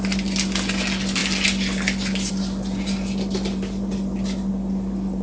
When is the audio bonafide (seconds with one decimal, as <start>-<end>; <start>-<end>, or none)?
0.0-5.2

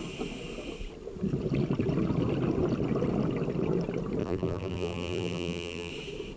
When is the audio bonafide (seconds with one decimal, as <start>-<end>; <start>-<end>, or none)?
0.0-4.2; 5.9-6.4

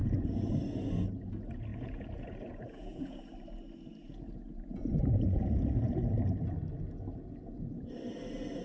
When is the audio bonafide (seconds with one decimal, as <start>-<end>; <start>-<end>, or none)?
0.5-1.7; 3.2-4.0; 5.8-8.6

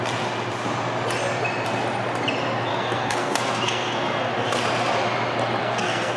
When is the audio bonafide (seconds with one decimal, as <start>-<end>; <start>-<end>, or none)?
0.0-2.7; 4.3-5.6

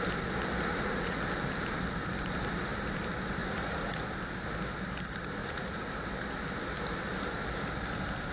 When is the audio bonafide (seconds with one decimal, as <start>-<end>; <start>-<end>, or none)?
0.0-0.7; 1.2-3.4; 4.0-5.4; 5.9-8.3